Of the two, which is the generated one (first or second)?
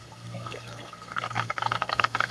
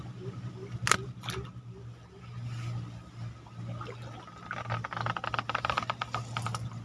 first